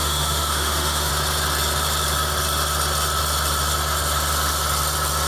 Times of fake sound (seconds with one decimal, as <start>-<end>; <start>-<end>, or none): 0.0-1.1